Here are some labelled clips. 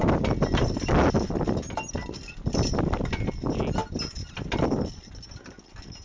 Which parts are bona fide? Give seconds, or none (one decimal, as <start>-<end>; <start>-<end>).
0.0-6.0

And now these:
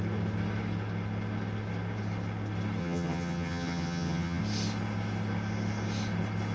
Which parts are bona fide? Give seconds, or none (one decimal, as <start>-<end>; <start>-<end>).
0.0-2.8; 4.4-6.5

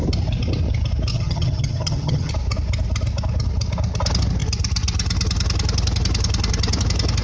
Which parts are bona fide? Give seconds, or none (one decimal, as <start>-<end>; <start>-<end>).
0.0-1.1; 2.3-7.2

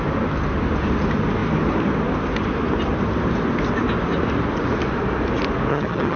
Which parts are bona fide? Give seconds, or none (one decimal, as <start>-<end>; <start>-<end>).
0.0-5.7

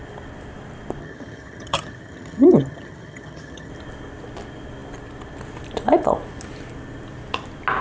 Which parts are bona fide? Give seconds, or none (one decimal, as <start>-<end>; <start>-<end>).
0.0-1.0; 3.7-7.8

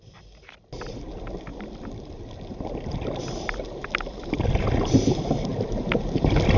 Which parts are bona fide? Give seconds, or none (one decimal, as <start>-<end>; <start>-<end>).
0.0-6.6

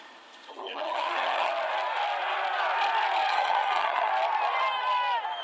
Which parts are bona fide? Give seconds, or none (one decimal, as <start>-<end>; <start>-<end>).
0.0-0.5; 1.5-3.3; 4.1-5.4